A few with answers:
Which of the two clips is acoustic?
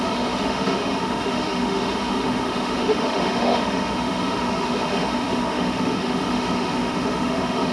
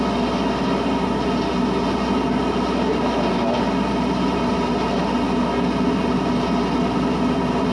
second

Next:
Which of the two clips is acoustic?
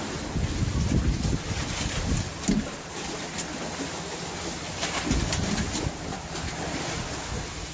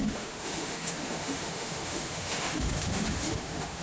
first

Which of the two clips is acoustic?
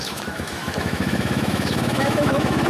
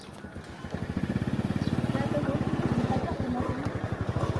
second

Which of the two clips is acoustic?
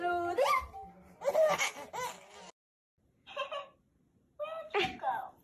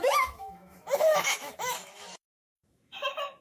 first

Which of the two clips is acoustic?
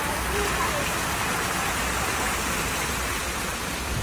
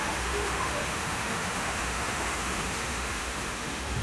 first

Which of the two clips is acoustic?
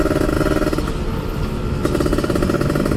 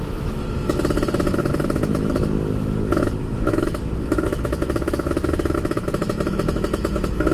first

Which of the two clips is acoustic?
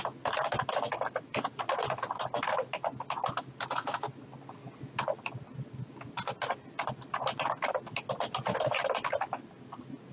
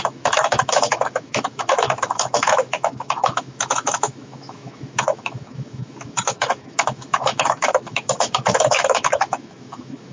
first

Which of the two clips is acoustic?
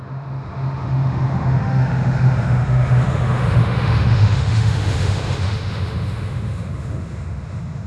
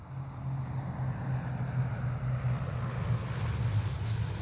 second